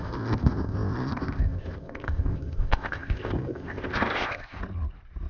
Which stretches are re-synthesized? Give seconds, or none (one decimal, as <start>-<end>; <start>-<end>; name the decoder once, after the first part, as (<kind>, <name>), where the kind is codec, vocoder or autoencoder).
0.0-4.6 (codec, ZipCodec)